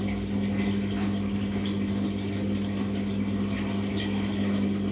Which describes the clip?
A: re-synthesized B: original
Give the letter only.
B